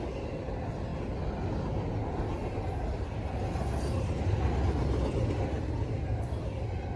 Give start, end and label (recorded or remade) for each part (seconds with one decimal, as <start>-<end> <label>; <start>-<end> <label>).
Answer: 0.0-7.0 recorded